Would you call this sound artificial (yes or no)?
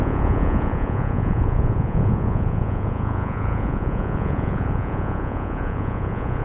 yes